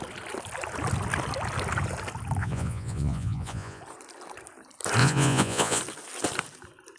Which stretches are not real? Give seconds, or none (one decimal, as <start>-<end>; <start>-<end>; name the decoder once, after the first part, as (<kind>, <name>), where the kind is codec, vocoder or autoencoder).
2.4-3.8 (vocoder, Vocos); 5.0-5.8